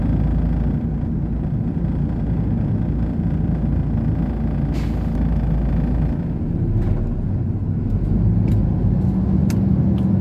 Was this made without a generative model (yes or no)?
yes